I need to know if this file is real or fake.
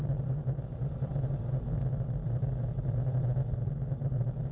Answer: real